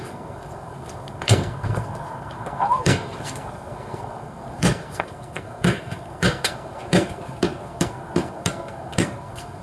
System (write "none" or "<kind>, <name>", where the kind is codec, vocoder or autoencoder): codec, SNAC